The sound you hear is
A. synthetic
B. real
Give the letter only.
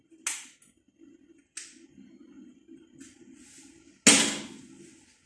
B